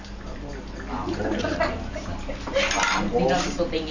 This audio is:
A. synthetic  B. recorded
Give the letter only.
B